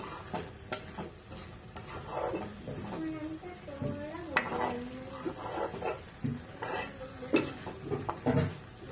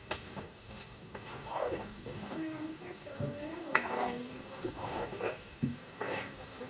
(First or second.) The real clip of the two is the first